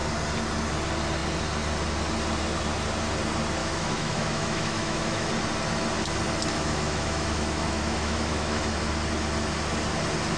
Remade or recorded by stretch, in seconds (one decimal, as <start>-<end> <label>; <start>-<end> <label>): 0.0-3.6 recorded; 3.6-5.3 remade; 5.3-6.5 recorded; 6.5-8.7 remade; 8.7-10.4 recorded